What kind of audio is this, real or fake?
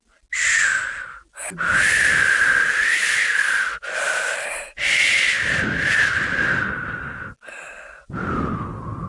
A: real